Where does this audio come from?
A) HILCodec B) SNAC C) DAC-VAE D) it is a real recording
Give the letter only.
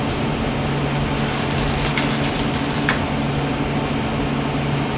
D